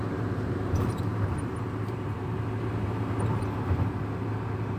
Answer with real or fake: fake